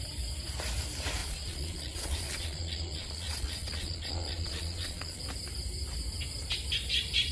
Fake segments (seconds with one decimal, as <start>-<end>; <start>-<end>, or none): 1.2-5.2